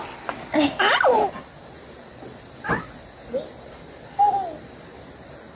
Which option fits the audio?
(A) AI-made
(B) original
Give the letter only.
B